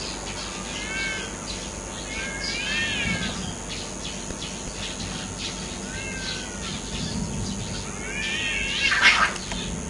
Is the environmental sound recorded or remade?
recorded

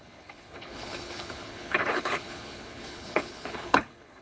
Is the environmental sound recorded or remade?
remade